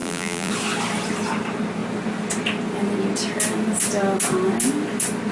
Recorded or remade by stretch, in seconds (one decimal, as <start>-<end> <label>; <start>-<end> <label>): 0.0-0.5 remade; 0.5-5.3 recorded